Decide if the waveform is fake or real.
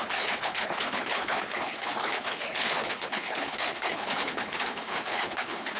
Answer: fake